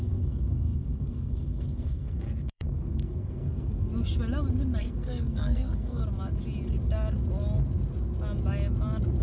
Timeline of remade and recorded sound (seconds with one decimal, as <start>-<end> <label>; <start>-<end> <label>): 0.0-3.9 remade; 3.9-4.8 recorded; 4.8-6.0 remade; 6.0-9.2 recorded